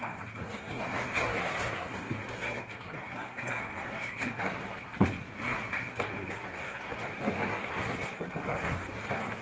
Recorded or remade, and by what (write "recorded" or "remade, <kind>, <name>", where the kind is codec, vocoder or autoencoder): remade, codec, SNAC